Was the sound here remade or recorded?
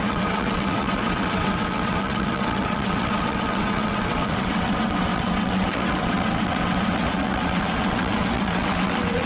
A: remade